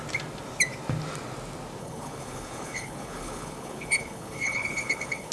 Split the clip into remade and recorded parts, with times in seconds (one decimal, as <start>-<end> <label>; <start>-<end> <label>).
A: 0.0-1.8 recorded; 1.8-5.3 remade